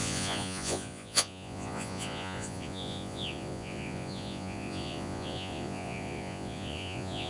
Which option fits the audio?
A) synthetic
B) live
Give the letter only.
A